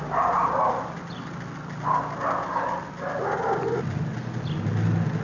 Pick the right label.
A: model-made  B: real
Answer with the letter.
B